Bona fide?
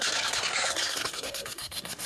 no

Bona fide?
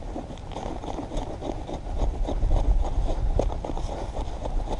yes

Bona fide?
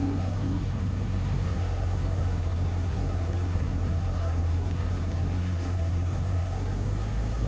no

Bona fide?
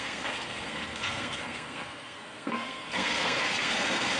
no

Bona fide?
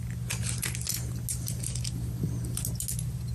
yes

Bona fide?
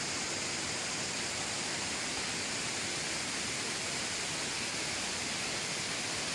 yes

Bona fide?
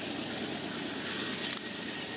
yes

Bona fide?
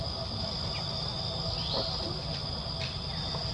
yes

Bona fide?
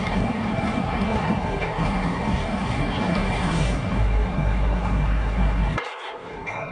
no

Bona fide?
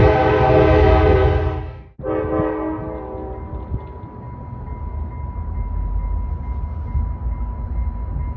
yes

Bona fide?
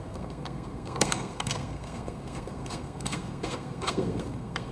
no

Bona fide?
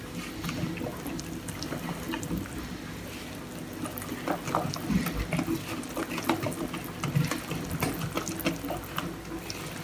yes